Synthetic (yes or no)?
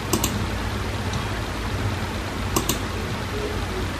no